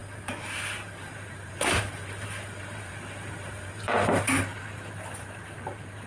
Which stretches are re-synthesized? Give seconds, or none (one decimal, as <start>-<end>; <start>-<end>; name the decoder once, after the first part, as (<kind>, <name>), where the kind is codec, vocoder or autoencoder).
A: 0.0-6.1 (vocoder, BigVGAN v2)